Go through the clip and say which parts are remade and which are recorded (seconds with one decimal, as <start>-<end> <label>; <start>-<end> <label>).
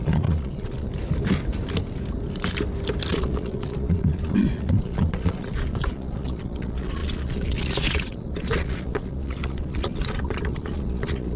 0.0-0.9 remade; 0.9-3.1 recorded; 3.1-11.4 remade